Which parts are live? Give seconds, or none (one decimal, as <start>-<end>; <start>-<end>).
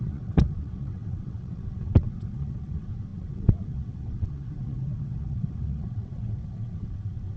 none